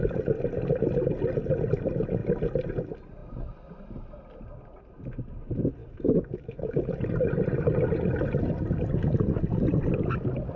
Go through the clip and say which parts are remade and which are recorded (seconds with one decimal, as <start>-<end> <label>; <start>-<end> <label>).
0.0-5.8 recorded; 5.8-6.9 remade; 6.9-10.6 recorded